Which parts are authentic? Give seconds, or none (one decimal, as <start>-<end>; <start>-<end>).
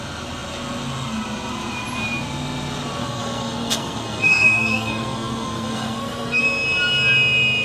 0.0-3.0; 6.4-7.6